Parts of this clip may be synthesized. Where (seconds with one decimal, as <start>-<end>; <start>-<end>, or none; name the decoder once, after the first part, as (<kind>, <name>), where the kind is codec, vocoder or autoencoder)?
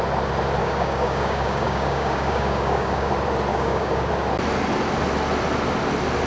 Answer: 0.6-3.1 (codec, DAC); 3.5-4.1